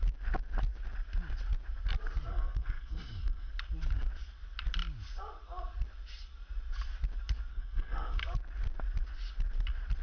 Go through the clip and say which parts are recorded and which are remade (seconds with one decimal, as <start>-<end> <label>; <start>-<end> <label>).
0.0-2.3 recorded; 2.3-3.5 remade; 3.5-7.5 recorded; 7.5-8.2 remade; 8.2-10.0 recorded